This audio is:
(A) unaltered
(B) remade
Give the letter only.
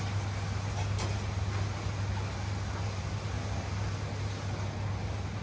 A